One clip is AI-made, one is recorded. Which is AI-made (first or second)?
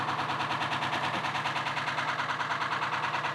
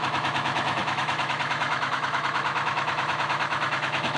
second